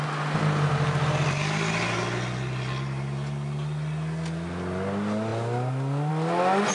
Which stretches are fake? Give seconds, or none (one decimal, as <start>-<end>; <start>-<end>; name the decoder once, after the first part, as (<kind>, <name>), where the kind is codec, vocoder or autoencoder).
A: none